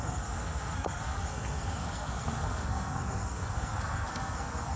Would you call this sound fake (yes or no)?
yes